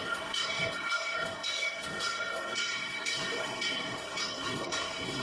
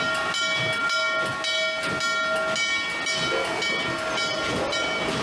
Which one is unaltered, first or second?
second